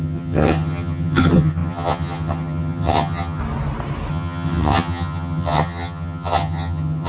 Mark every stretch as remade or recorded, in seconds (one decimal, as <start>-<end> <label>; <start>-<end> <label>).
0.0-3.4 remade; 3.4-4.1 recorded; 4.1-7.1 remade